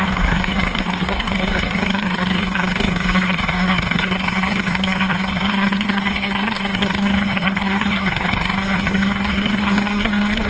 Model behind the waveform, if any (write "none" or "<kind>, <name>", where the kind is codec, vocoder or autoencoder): codec, SNAC